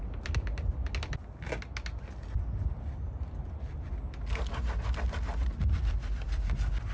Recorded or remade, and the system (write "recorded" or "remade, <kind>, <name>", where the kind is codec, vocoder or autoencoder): recorded